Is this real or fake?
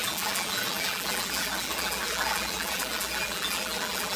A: fake